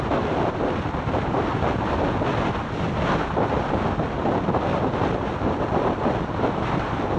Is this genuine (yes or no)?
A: yes